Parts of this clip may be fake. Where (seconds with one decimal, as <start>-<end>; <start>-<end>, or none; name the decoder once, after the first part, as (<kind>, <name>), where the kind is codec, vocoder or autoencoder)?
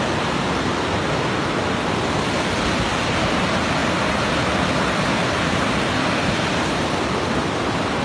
3.8-8.0 (vocoder, BigVGAN v2)